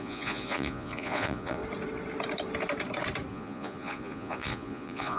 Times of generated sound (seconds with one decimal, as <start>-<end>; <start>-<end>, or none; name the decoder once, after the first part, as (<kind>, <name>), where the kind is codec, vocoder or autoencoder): 0.0-1.6 (vocoder, Vocos); 3.3-5.2